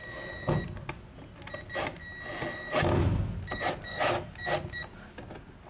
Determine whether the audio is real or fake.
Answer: real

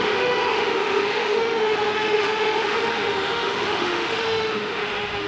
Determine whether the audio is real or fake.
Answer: fake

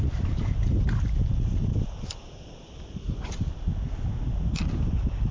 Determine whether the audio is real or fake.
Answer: real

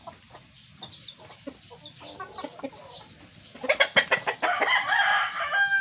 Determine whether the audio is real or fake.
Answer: real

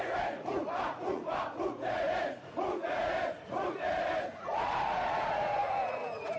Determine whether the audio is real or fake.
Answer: fake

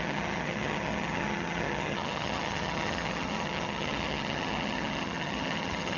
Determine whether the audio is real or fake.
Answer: fake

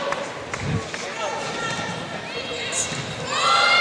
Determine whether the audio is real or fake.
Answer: real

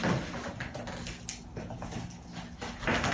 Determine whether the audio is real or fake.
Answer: real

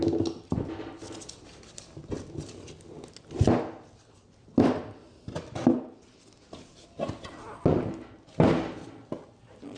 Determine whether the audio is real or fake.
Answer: real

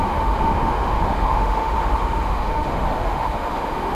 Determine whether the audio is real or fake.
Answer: fake